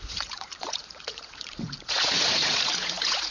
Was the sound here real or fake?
fake